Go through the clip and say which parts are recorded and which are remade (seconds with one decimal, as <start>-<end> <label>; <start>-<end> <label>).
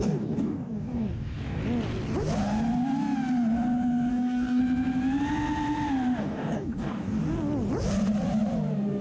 0.0-1.6 remade; 1.6-4.1 recorded; 4.1-4.6 remade; 4.6-6.2 recorded; 6.2-7.2 remade; 7.2-9.0 recorded